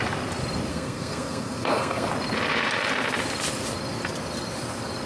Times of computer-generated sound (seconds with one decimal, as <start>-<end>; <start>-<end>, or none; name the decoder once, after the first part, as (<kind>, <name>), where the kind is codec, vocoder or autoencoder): 0.7-2.1 (codec, SNAC)